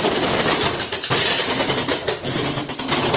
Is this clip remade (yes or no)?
yes